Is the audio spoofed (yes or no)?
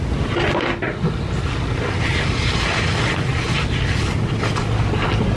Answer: no